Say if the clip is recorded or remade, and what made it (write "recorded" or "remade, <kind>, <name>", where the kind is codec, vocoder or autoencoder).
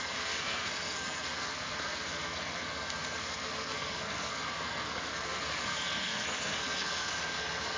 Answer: remade, codec, SNAC